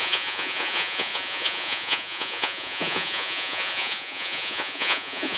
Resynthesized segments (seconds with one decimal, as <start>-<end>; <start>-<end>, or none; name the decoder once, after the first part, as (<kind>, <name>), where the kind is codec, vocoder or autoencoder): 0.0-5.4 (vocoder, Vocos)